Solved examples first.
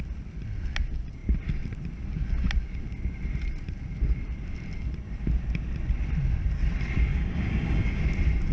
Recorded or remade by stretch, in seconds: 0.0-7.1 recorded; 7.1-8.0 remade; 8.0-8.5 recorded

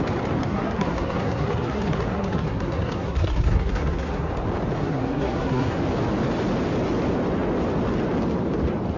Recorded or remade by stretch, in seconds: 0.0-0.4 recorded; 0.4-4.3 remade; 4.3-4.8 recorded; 4.8-5.8 remade; 5.8-9.0 recorded

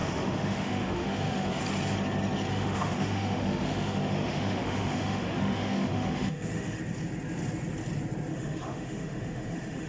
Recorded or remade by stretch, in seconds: 0.0-1.6 remade; 1.6-2.5 recorded; 2.5-6.8 remade; 6.8-8.3 recorded; 8.3-9.9 remade

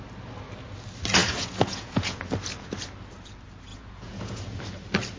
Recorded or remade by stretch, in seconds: 0.0-1.2 recorded; 1.2-2.2 remade; 2.2-3.7 recorded; 3.7-4.6 remade; 4.6-5.2 recorded

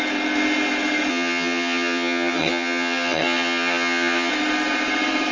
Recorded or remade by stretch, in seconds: 0.0-1.1 recorded; 1.1-4.3 remade; 4.3-5.3 recorded